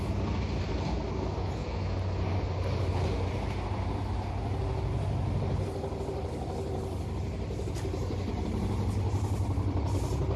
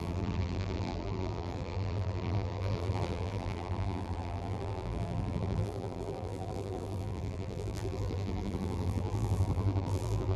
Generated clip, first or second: second